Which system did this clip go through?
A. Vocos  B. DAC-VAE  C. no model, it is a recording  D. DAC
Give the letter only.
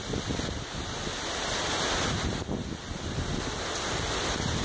C